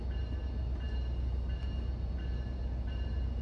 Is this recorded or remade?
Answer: recorded